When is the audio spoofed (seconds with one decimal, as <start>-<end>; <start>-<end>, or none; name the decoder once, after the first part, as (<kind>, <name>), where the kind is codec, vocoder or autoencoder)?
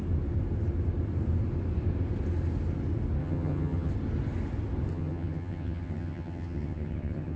3.2-3.9 (vocoder, HiFi-GAN); 4.9-7.4